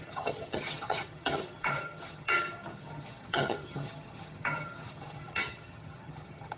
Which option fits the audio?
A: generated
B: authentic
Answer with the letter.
A